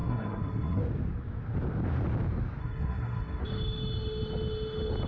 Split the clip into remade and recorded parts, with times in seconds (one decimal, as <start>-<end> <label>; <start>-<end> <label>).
0.0-0.8 remade; 0.8-2.6 recorded; 2.6-3.4 remade; 3.4-5.1 recorded